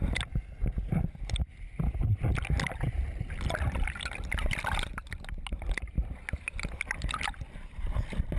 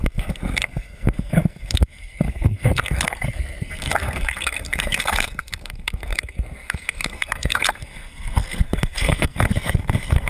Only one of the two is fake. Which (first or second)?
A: second